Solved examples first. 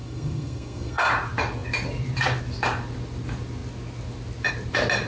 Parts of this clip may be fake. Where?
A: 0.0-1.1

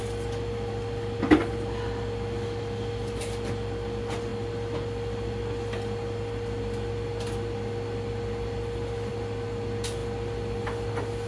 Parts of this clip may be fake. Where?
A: none

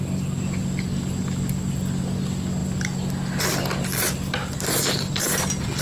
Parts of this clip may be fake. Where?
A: none